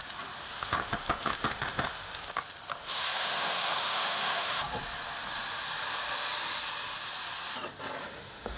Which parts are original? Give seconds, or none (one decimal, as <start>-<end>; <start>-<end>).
0.0-0.5; 2.4-2.8; 4.6-8.0